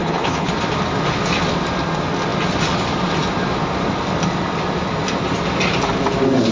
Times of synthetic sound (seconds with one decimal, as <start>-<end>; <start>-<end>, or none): 0.0-0.5